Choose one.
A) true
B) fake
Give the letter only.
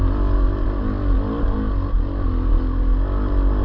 A